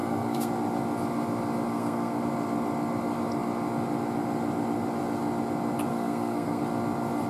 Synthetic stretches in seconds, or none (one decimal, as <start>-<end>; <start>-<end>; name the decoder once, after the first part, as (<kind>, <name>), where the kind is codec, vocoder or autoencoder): 0.0-0.5 (codec, SNAC); 1.7-2.2; 5.9-6.6

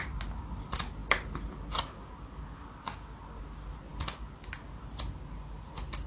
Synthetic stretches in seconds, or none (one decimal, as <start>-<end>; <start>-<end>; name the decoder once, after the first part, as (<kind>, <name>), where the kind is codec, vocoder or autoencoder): none

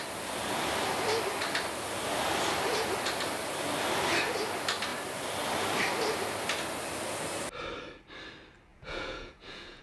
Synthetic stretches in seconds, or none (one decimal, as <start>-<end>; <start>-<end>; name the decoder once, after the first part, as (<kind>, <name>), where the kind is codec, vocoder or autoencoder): 8.7-9.8 (vocoder, Vocos)

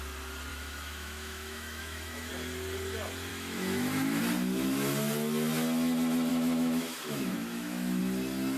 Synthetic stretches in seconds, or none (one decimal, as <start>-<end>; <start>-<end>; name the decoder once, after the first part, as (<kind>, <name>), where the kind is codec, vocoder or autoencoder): 0.5-2.3 (autoencoder, DAC-VAE); 3.3-4.2; 6.3-8.0

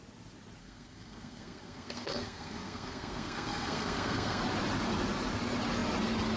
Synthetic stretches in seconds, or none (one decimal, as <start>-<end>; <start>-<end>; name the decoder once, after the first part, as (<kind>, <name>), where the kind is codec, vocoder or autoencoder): 0.6-4.4 (codec, SNAC)

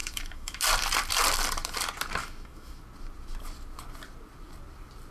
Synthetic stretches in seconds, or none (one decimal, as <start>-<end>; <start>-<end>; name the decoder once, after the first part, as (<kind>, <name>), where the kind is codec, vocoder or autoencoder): 0.0-0.6 (autoencoder, DAC-VAE); 2.2-2.8

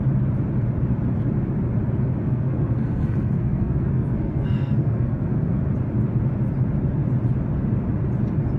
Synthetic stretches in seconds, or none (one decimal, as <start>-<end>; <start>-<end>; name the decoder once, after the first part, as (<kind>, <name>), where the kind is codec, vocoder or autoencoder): 2.1-5.6 (codec, SNAC)